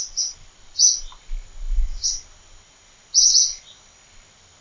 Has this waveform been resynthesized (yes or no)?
no